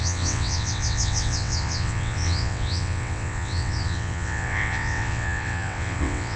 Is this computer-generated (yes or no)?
yes